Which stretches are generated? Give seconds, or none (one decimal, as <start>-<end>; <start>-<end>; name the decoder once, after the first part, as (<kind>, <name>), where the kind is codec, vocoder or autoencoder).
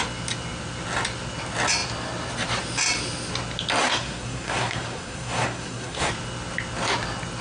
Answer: 3.8-6.1 (codec, SNAC)